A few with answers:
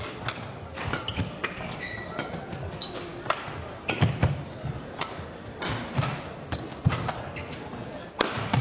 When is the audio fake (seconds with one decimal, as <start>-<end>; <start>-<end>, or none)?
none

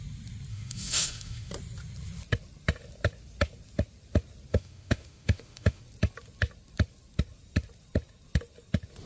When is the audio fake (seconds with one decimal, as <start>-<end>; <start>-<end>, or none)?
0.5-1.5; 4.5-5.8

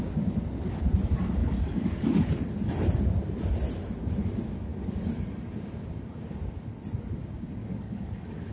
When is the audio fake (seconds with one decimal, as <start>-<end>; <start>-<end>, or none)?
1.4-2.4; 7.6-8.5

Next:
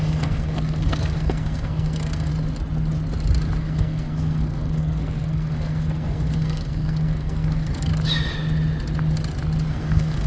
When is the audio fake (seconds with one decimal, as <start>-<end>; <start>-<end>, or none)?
0.0-2.3; 3.6-7.9; 9.7-10.3